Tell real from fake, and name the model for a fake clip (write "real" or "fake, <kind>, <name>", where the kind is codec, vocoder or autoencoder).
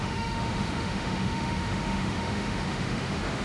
fake, autoencoder, DAC-VAE